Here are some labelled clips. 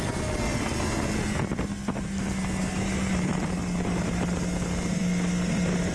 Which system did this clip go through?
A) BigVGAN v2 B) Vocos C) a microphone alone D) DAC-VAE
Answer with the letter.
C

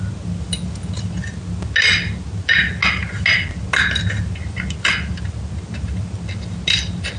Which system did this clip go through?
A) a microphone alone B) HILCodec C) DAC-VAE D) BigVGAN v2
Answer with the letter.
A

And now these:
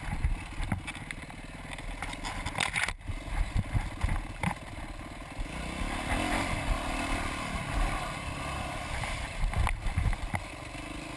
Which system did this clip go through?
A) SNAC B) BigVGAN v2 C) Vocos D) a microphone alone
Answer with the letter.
D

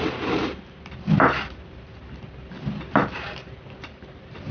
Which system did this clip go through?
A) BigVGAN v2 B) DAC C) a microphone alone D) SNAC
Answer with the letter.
A